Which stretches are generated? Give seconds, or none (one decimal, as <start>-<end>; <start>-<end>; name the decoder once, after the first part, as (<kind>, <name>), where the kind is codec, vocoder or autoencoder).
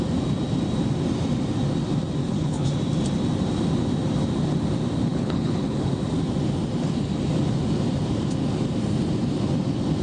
2.2-2.7 (codec, HILCodec); 5.1-5.9